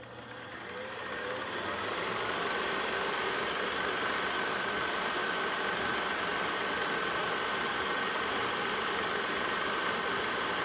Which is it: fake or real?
real